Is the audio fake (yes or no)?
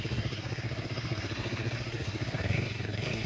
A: yes